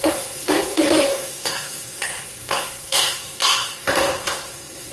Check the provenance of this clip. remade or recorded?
remade